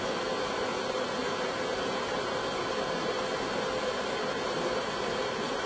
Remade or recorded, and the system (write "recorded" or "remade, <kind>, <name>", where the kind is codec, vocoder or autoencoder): recorded